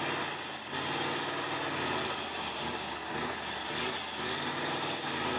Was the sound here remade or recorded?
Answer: recorded